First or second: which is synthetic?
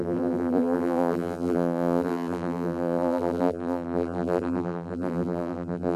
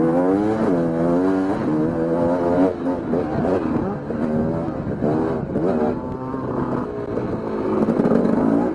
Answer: first